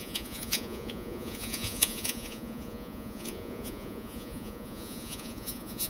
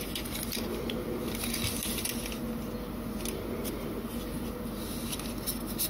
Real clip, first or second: second